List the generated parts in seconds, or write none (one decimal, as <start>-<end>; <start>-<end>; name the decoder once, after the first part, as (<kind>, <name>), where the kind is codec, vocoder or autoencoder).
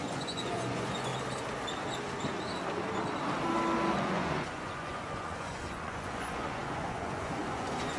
0.0-1.1 (vocoder, Vocos); 4.0-8.0